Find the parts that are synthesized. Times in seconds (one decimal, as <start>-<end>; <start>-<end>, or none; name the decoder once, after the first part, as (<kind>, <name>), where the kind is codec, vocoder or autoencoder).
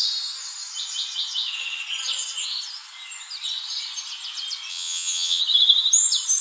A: 4.7-5.4 (vocoder, WaveNeXt)